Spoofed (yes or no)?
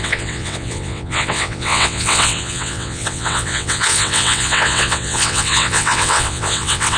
yes